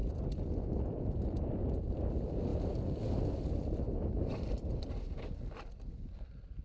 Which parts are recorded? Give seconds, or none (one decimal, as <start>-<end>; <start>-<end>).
0.0-6.6